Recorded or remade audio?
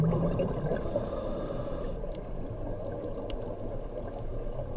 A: recorded